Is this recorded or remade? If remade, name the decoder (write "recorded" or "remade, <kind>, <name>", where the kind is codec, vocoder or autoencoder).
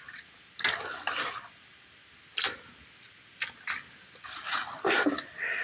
recorded